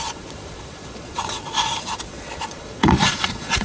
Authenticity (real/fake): fake